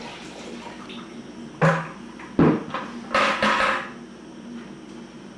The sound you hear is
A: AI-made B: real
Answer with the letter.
B